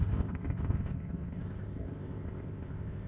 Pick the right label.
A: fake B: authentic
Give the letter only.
A